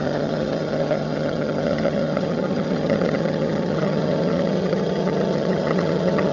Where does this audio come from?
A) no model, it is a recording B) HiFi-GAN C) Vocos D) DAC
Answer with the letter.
B